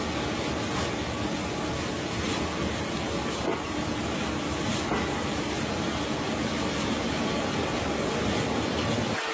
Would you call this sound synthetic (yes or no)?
no